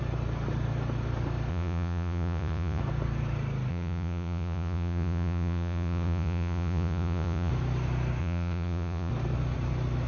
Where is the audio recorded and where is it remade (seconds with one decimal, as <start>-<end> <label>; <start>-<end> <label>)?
0.0-1.5 recorded; 1.5-2.8 remade; 2.8-3.7 recorded; 3.7-7.5 remade; 7.5-8.2 recorded; 8.2-9.1 remade; 9.1-10.1 recorded